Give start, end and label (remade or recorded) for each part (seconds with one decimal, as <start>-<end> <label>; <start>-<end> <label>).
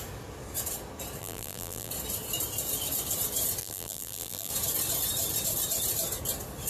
0.0-1.2 recorded; 1.2-1.9 remade; 1.9-3.6 recorded; 3.6-4.5 remade; 4.5-6.7 recorded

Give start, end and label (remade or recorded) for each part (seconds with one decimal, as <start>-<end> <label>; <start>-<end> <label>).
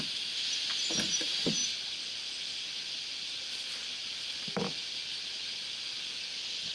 0.0-6.7 recorded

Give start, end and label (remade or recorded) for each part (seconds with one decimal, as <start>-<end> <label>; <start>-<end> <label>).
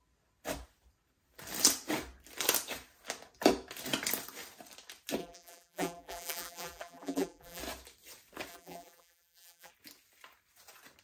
0.0-5.2 recorded; 5.2-7.6 remade; 7.6-8.5 recorded; 8.5-9.7 remade; 9.7-11.0 recorded